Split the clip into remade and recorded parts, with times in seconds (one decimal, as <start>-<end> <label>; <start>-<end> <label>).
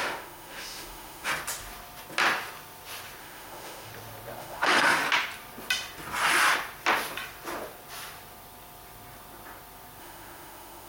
0.0-1.3 remade; 1.3-3.2 recorded; 3.2-3.9 remade; 3.9-4.4 recorded; 4.4-5.0 remade; 5.0-10.0 recorded; 10.0-10.9 remade